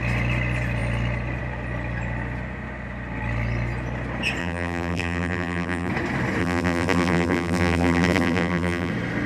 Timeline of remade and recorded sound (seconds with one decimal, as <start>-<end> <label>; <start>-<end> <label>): 0.0-4.4 recorded; 4.4-5.9 remade; 5.9-6.4 recorded; 6.4-8.9 remade; 8.9-9.3 recorded